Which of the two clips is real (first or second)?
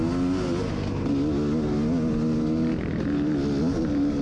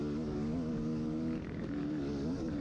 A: first